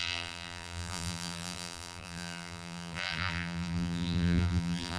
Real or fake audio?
fake